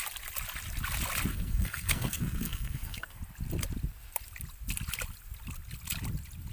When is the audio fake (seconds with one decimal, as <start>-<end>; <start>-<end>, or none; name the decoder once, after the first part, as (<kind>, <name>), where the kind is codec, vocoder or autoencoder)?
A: 1.3-3.2 (codec, SNAC)